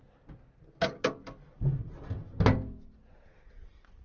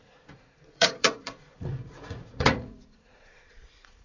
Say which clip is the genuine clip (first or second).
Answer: first